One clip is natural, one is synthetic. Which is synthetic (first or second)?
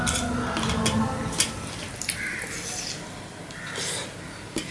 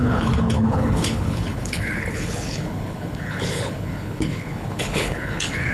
second